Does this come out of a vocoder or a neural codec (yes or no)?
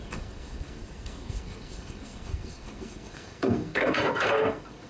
yes